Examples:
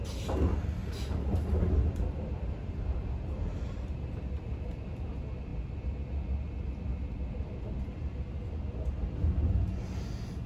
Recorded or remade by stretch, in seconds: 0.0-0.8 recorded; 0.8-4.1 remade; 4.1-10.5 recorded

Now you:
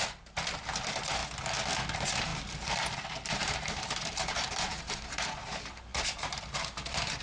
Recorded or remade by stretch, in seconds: 0.0-1.2 remade; 1.2-1.9 recorded; 1.9-2.3 remade; 2.3-3.3 recorded; 3.3-7.2 remade

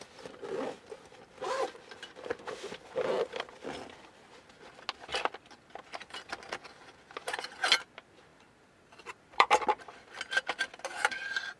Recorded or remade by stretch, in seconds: 0.0-8.3 recorded; 8.3-10.1 remade; 10.1-11.6 recorded